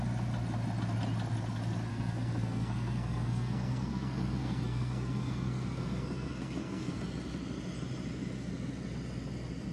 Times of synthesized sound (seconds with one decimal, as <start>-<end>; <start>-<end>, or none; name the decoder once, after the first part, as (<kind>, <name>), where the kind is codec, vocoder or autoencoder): 1.9-7.0 (codec, SNAC)